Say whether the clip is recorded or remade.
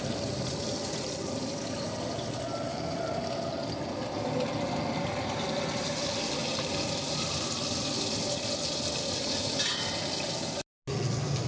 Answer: recorded